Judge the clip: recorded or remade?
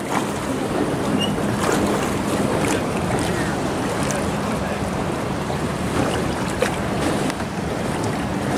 recorded